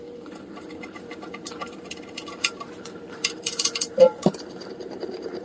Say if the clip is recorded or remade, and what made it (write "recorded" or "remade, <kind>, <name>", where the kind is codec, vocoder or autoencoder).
remade, vocoder, BigVGAN v2